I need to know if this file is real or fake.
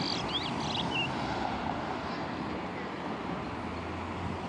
real